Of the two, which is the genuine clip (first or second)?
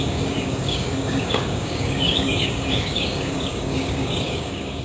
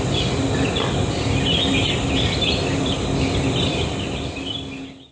second